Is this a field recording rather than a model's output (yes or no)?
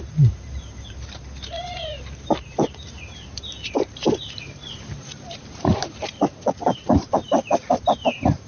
no